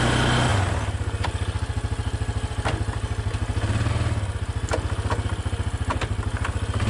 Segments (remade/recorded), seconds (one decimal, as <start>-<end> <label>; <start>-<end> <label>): 0.0-6.9 recorded